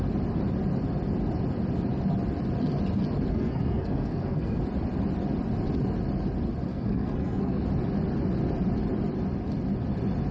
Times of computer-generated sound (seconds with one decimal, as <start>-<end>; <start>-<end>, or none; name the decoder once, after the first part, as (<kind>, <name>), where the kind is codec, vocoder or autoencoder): 3.3-4.6 (codec, SNAC); 6.7-7.6